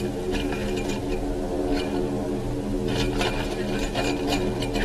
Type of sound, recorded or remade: recorded